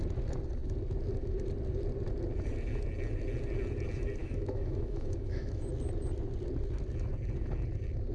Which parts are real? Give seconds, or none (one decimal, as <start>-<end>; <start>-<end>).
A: 0.0-4.2; 5.7-8.1